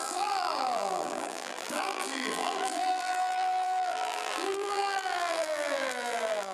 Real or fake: fake